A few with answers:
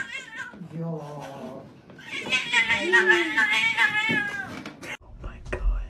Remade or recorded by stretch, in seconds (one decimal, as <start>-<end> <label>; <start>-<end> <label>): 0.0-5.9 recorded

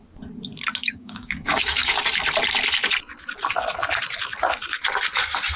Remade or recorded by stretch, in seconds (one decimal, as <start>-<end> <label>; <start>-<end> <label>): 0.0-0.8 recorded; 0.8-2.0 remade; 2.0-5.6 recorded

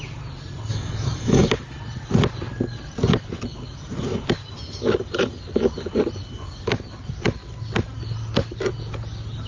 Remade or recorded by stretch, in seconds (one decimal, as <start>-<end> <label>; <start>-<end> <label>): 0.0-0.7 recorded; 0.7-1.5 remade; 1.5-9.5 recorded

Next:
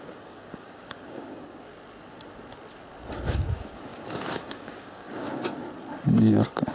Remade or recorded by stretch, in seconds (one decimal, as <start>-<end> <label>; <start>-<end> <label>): 0.0-1.7 remade; 1.7-3.3 recorded; 3.3-5.6 remade; 5.6-6.7 recorded

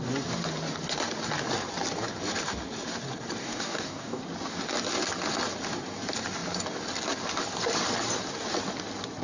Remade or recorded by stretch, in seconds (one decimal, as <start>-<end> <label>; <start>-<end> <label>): 0.0-3.4 recorded; 3.4-4.2 remade; 4.2-9.2 recorded